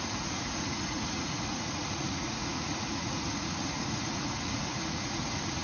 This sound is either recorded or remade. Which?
remade